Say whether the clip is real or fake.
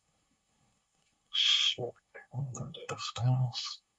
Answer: fake